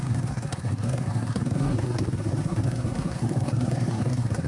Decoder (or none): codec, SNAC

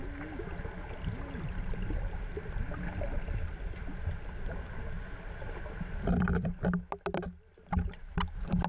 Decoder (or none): none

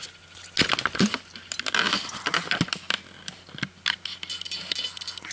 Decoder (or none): none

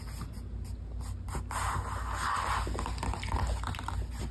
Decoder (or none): none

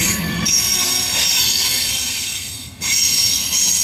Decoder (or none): codec, SNAC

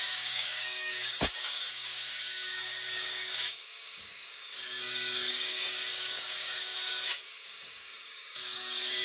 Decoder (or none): codec, DAC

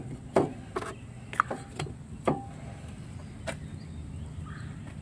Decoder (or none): none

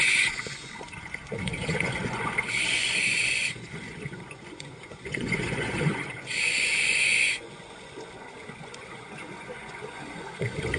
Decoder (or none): vocoder, Vocos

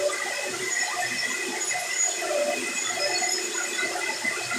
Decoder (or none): none